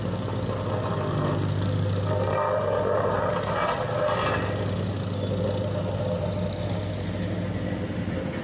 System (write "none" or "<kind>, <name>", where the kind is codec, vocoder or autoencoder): none